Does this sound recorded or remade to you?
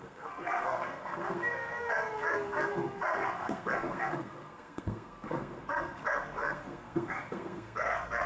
remade